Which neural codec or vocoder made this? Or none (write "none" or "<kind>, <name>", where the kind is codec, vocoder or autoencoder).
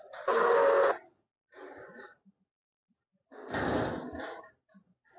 none